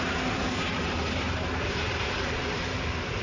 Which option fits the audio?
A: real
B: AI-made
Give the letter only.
B